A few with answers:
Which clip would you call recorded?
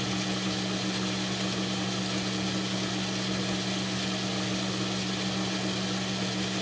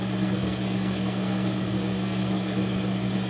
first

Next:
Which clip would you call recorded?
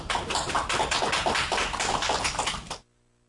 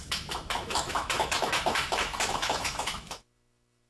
first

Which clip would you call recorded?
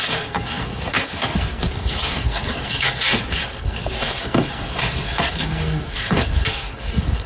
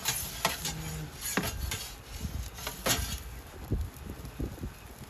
second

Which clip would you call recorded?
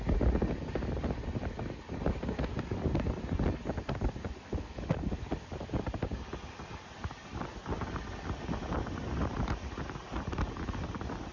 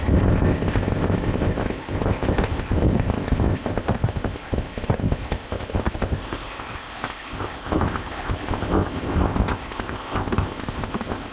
first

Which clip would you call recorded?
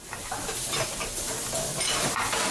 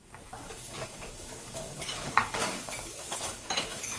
first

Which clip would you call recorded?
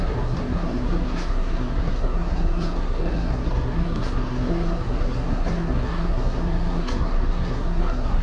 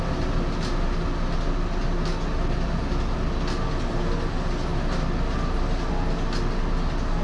second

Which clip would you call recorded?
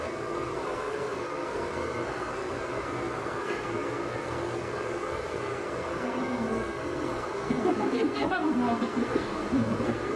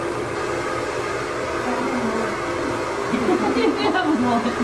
second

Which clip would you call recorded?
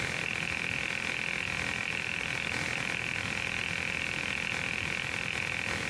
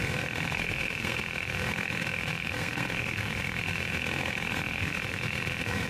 first